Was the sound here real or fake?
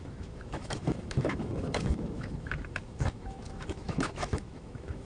fake